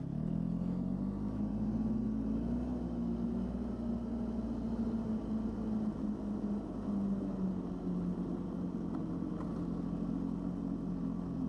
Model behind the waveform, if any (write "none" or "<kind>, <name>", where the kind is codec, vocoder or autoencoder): none